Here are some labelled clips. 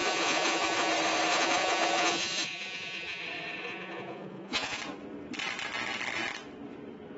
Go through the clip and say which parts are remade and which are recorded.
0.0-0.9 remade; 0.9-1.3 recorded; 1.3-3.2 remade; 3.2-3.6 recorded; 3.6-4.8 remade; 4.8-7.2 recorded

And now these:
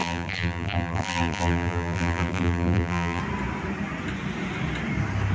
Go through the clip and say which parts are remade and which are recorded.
0.0-3.2 remade; 3.2-5.3 recorded

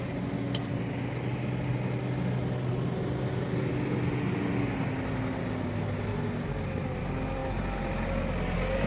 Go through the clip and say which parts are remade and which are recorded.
0.0-8.9 recorded

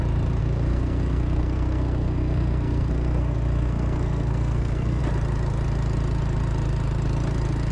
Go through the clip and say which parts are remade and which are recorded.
0.0-0.4 recorded; 0.4-5.0 remade; 5.0-7.7 recorded

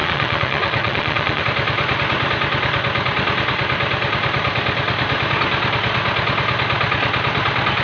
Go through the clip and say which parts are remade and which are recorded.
0.0-1.4 remade; 1.4-7.8 recorded